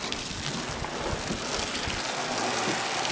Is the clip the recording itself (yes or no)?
yes